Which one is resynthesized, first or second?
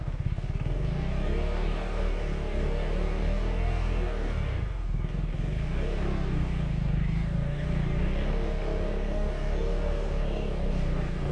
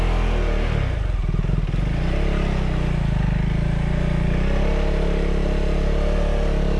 first